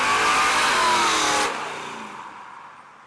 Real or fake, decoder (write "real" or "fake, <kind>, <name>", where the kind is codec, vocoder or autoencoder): real